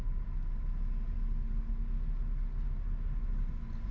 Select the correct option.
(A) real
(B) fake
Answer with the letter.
A